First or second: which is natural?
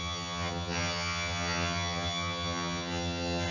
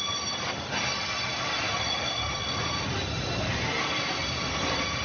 second